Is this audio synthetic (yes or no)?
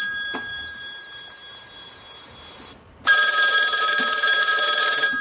yes